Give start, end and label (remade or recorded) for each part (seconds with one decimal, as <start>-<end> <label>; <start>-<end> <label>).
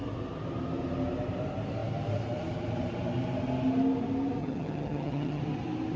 0.0-4.4 recorded; 4.4-5.4 remade; 5.4-6.0 recorded